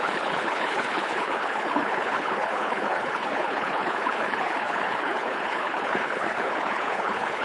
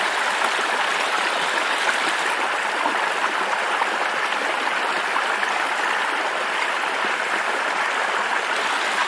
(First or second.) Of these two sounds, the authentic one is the second